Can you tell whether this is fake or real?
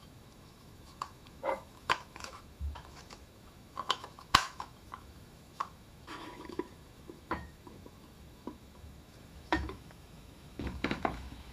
fake